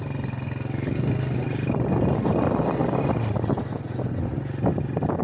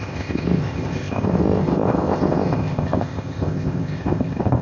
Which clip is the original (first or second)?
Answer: first